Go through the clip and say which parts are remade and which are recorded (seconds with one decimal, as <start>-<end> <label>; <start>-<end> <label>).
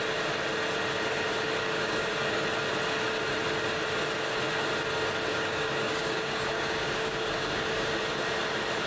0.0-1.6 recorded; 1.6-2.1 remade; 2.1-5.3 recorded; 5.3-7.9 remade; 7.9-8.9 recorded